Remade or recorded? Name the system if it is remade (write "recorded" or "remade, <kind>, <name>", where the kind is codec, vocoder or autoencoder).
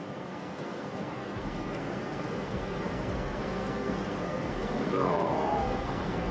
remade, codec, SNAC